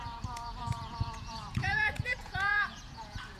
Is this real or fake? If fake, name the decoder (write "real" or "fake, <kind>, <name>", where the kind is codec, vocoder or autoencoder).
fake, vocoder, Vocos